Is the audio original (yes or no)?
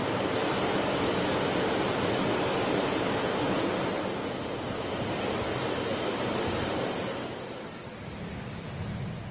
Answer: yes